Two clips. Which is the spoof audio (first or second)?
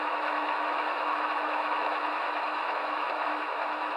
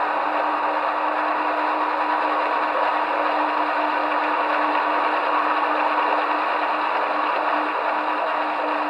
first